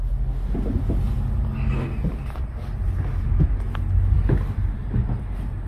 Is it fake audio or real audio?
real